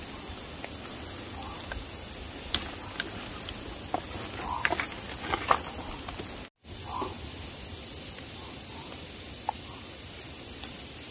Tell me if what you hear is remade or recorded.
recorded